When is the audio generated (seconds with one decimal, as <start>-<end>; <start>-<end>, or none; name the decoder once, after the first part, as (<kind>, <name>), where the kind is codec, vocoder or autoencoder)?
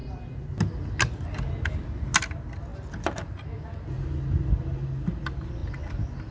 none